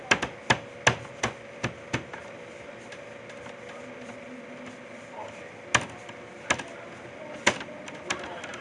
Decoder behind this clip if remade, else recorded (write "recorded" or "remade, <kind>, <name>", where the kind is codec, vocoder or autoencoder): recorded